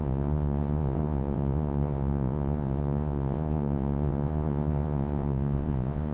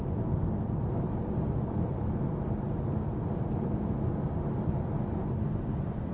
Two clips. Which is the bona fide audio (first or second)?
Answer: second